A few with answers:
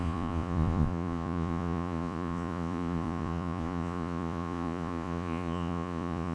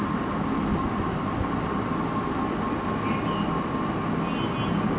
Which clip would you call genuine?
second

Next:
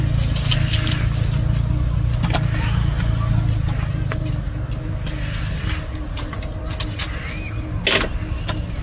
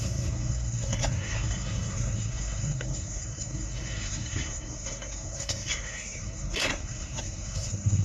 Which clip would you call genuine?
first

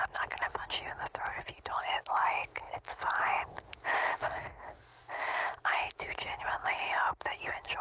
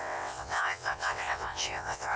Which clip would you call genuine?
first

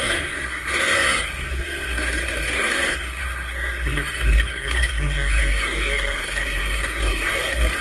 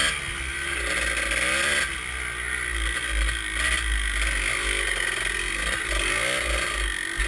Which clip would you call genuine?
second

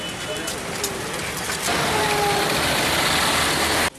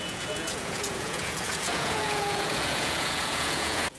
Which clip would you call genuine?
first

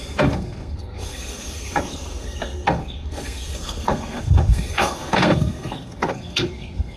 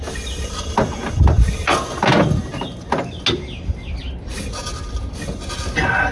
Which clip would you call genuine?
second